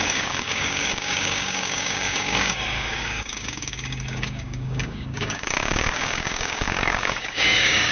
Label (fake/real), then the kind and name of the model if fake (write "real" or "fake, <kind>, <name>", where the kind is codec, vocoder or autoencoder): fake, codec, DAC